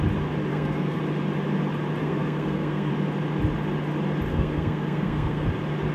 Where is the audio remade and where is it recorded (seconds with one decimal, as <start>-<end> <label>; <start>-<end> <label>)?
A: 0.0-0.5 recorded; 0.5-1.0 remade; 1.0-2.0 recorded; 2.0-2.9 remade; 2.9-4.3 recorded; 4.3-5.5 remade; 5.5-5.9 recorded